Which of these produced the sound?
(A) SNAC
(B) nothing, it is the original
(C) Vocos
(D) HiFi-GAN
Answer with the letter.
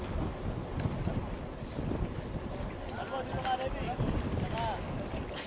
B